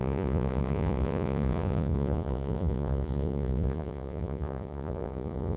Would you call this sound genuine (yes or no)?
no